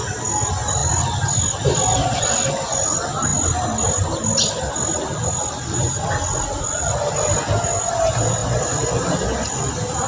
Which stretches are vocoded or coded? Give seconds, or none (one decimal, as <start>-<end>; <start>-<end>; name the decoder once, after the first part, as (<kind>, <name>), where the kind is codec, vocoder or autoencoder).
none